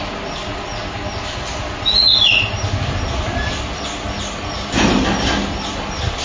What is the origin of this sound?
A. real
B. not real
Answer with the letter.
A